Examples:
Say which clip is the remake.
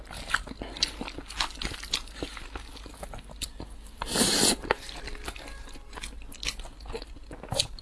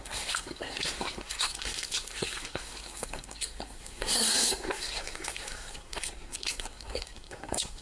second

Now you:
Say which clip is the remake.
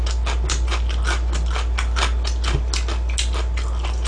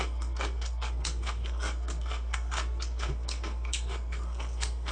second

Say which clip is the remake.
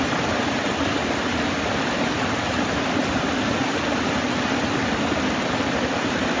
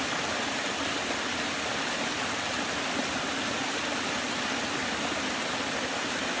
first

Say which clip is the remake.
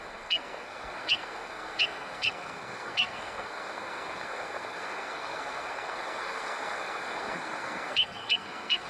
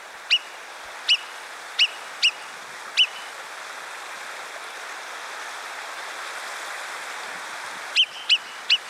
first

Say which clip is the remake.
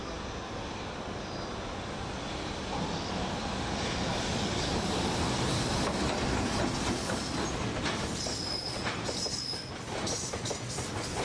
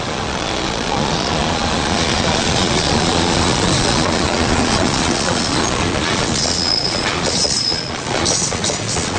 second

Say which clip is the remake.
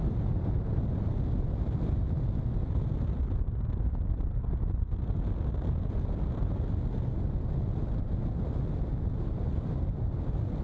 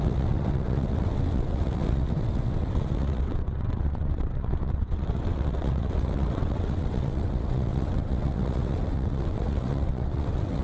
second